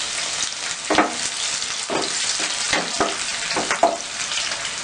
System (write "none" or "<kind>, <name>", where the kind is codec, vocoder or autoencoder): none